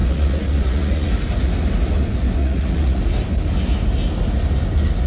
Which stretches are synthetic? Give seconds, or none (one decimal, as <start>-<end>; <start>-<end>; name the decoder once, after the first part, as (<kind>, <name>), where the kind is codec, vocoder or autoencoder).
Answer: 0.0-1.1 (vocoder, Vocos); 2.4-3.0